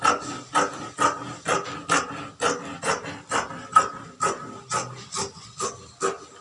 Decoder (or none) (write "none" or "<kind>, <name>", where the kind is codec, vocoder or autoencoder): none